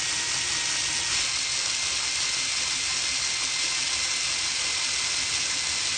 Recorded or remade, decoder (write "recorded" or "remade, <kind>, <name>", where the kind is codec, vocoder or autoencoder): recorded